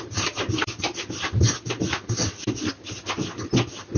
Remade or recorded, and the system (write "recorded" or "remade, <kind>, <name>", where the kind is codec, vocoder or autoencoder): recorded